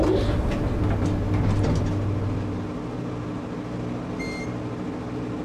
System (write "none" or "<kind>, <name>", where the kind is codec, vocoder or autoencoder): none